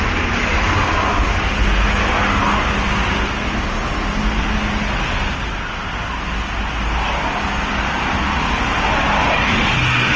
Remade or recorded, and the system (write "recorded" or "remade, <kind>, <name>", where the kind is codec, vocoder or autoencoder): recorded